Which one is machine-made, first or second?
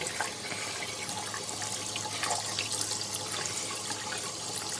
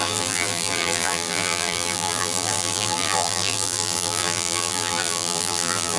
second